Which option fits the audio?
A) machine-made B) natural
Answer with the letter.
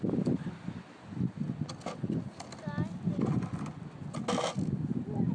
B